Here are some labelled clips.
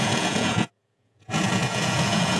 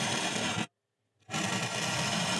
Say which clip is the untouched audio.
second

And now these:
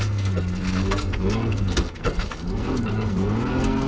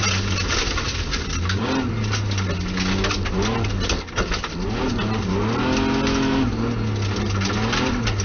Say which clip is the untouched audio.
second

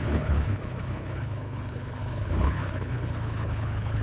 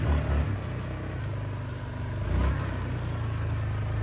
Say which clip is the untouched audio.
second